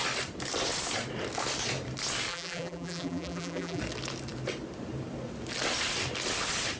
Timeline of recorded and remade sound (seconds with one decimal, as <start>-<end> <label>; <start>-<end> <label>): 0.0-2.3 recorded; 2.3-3.8 remade; 3.8-6.8 recorded